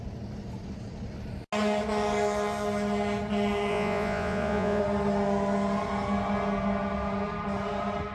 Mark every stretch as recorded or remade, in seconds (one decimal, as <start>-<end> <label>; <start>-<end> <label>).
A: 0.0-3.7 recorded; 3.7-4.8 remade; 4.8-8.1 recorded